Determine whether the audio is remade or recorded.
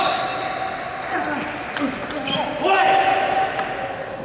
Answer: recorded